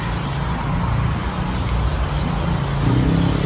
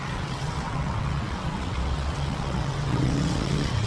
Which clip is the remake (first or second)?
second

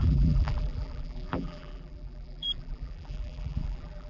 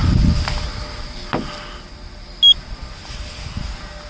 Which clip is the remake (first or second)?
first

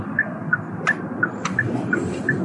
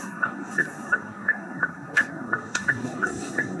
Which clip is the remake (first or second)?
second